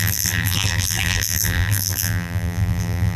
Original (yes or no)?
no